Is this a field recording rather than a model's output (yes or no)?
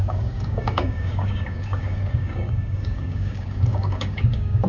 no